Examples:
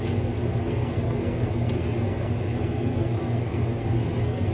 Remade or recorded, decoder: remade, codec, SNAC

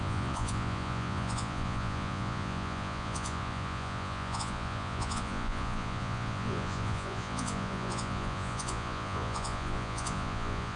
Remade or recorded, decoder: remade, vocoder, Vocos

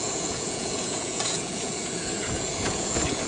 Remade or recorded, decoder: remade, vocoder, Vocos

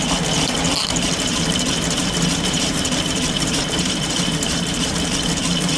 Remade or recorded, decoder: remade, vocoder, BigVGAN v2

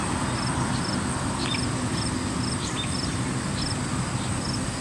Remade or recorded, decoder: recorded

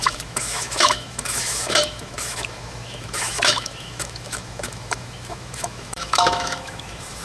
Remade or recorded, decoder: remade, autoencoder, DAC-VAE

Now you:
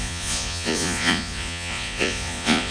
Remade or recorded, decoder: remade, vocoder, Vocos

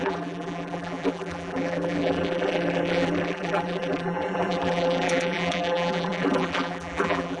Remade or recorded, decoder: remade, vocoder, BigVGAN v2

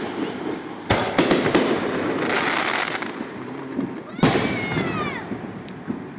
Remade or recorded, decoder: recorded